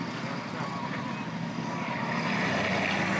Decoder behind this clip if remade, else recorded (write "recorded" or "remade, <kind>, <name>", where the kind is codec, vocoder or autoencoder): recorded